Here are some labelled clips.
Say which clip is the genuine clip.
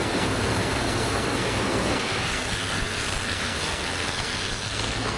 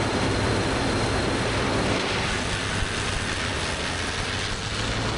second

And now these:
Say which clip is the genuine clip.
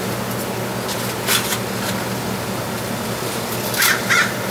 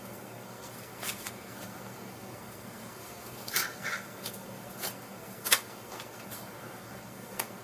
first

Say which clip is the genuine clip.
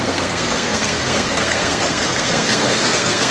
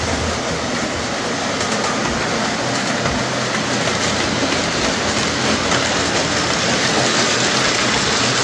second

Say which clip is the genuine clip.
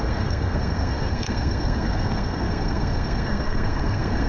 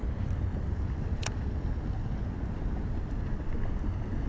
second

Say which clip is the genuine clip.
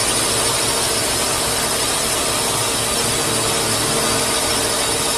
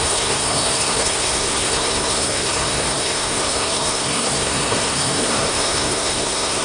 first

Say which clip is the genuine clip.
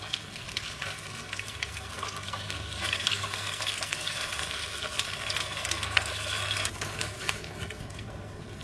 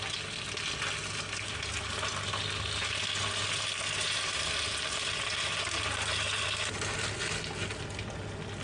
second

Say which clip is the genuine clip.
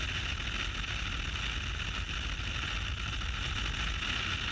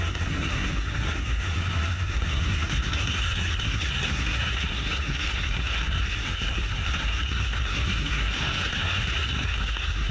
first